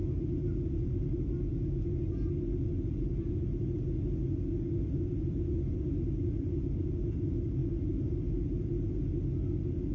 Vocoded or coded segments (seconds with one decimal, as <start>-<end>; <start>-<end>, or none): none